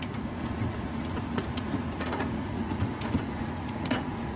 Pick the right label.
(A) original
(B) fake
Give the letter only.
B